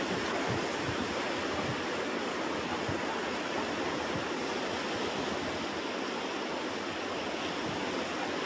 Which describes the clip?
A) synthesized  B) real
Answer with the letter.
B